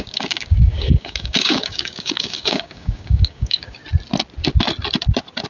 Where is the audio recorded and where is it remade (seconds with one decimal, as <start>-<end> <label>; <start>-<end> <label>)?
0.0-3.8 remade; 3.8-5.5 recorded